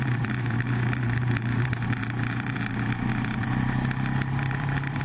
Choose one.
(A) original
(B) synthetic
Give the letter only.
B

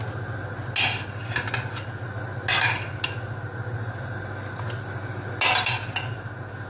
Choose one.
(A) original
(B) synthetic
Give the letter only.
A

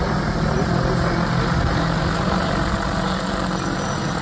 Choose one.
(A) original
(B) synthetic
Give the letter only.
A